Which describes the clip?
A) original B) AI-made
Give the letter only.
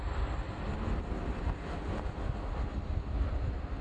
A